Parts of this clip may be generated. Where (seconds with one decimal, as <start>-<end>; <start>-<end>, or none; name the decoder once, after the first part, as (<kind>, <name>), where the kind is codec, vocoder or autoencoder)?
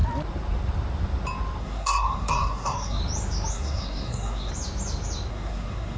1.6-3.0 (codec, SNAC); 3.5-4.5; 5.3-6.0